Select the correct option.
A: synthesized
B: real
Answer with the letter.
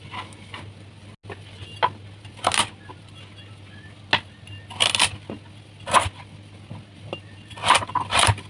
B